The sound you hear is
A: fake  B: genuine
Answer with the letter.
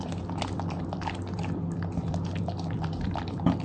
A